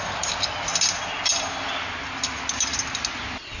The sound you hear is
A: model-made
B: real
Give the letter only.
B